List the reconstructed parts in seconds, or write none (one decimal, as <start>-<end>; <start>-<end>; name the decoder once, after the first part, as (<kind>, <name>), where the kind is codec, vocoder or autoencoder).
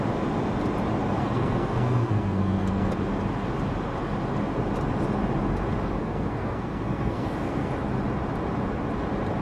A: 1.2-2.9 (codec, SNAC); 6.0-7.7